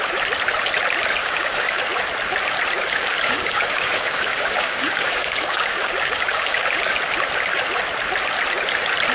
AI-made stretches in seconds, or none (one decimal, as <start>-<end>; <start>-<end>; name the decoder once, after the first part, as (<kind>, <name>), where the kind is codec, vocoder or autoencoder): 1.2-1.8 (codec, DAC); 2.8-6.9